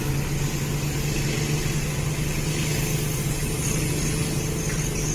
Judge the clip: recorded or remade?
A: recorded